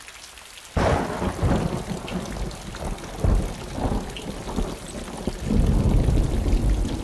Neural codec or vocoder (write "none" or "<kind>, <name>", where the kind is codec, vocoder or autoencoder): none